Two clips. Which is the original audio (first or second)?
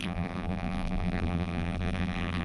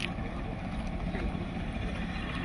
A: second